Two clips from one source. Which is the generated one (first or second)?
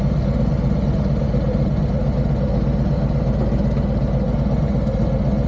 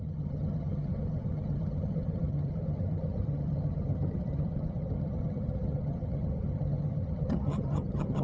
second